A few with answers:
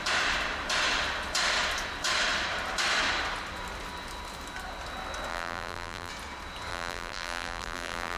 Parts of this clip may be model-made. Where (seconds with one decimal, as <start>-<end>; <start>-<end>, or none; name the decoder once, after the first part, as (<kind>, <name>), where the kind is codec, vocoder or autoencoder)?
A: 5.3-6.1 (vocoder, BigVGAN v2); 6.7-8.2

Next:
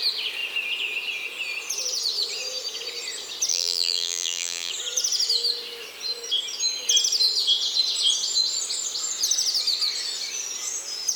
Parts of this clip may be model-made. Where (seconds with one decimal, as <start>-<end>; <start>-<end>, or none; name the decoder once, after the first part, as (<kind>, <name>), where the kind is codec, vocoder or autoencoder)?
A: 3.5-4.7 (vocoder, BigVGAN v2)

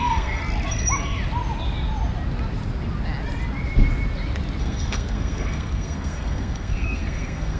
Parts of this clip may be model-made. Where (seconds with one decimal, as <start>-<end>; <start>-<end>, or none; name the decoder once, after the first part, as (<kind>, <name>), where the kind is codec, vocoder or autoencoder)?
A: 0.0-0.4 (codec, SNAC); 4.6-7.6

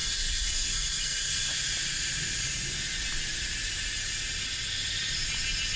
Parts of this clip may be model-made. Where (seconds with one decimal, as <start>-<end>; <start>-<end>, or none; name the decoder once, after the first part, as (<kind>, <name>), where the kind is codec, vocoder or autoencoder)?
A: 0.0-1.5 (codec, SNAC)

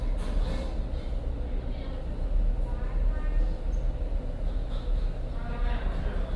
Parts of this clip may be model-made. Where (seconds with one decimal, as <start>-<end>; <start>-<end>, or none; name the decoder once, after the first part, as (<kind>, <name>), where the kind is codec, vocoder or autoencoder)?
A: 4.6-5.3 (autoencoder, DAC-VAE)